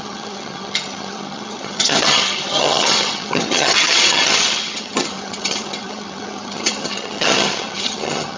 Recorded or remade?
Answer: remade